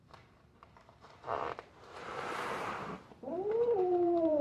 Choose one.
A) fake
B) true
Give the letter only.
A